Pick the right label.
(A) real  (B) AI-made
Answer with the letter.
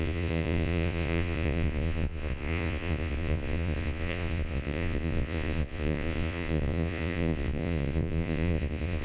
B